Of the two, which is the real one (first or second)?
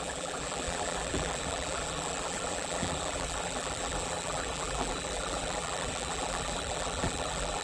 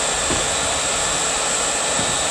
second